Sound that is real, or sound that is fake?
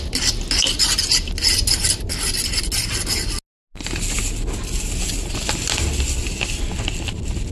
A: real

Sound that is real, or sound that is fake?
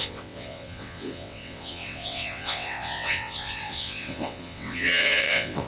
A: fake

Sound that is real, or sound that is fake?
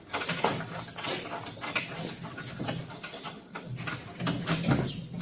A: real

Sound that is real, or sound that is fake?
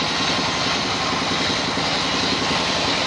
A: real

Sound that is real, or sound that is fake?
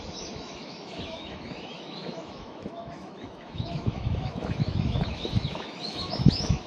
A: fake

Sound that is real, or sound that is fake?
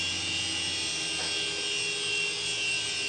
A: real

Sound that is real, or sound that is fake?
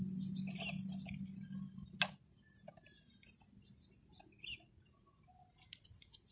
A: real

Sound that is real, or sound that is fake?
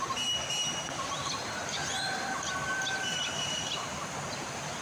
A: real